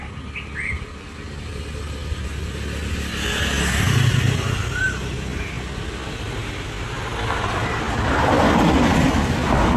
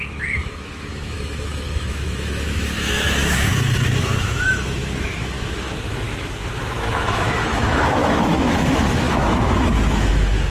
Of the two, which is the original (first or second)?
first